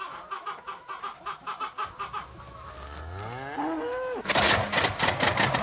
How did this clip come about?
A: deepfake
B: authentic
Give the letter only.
B